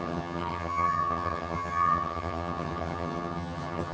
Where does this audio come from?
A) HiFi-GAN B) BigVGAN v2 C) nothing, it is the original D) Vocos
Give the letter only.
A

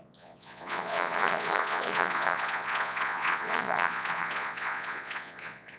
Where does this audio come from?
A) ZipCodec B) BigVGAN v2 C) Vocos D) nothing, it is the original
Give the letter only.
C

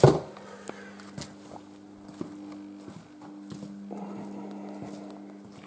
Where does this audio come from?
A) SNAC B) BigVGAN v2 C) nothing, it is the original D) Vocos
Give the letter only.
C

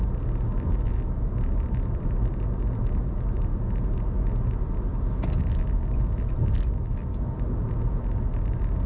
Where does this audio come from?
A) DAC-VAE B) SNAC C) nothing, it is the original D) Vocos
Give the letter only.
C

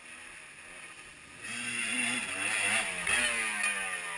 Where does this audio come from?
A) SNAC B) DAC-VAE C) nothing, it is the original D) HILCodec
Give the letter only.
C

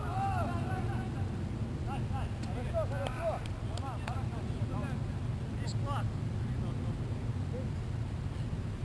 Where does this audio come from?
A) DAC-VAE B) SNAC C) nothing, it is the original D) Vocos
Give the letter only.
C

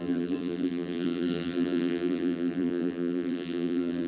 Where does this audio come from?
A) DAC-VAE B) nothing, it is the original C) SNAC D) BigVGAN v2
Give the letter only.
D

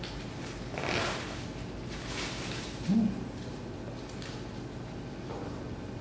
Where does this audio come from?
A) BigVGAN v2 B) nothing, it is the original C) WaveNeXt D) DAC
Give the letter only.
B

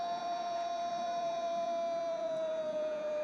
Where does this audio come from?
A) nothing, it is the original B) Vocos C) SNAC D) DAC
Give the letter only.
B